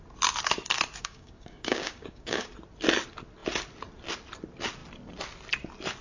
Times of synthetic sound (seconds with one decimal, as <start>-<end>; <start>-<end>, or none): 1.0-2.5